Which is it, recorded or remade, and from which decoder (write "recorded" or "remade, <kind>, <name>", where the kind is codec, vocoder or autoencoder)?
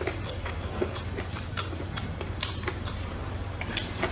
remade, vocoder, BigVGAN v2